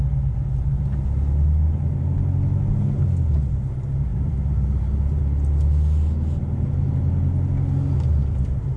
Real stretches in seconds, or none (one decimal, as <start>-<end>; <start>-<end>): 0.0-4.1; 5.2-8.8